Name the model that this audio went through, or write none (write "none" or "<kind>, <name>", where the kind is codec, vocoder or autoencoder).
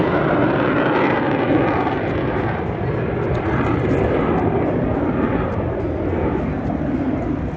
none